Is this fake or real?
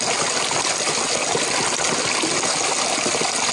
real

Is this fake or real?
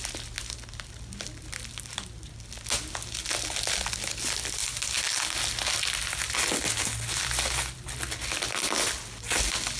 real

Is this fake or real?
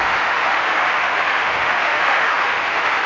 fake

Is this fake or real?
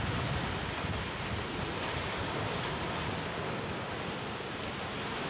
real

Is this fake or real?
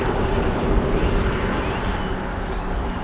real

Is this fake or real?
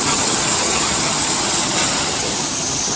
fake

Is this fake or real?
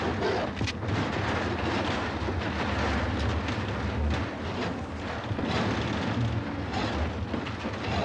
real